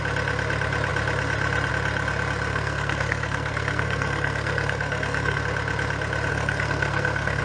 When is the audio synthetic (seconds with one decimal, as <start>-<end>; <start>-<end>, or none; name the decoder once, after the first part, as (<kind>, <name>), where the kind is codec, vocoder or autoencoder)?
2.5-5.4 (codec, SNAC); 6.3-7.4